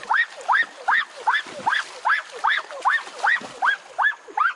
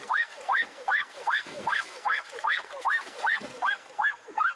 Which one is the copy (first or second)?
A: second